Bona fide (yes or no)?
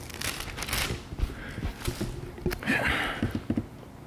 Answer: yes